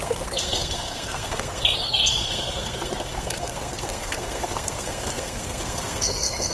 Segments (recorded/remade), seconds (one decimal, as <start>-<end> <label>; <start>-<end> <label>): 0.0-6.5 remade